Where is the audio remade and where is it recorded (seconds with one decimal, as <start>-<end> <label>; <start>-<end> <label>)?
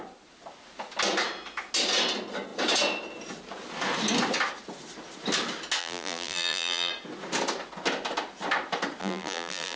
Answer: 0.0-5.8 recorded; 5.8-6.9 remade; 6.9-9.0 recorded; 9.0-9.8 remade